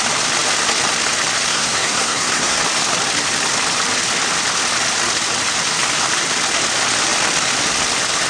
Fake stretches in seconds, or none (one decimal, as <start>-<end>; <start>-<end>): 1.5-2.6

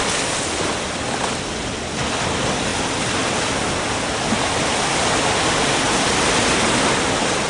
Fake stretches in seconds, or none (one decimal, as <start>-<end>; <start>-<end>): none

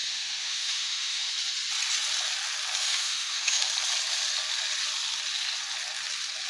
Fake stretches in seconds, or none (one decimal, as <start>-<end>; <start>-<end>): 0.0-1.3; 2.8-3.7

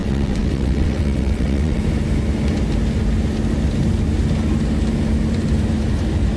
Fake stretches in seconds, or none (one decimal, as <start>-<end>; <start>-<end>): 0.0-1.8

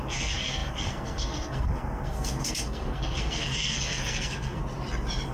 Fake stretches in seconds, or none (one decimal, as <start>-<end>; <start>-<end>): 0.0-4.6

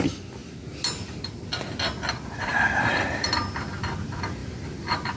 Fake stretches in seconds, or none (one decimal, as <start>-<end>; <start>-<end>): 2.5-3.3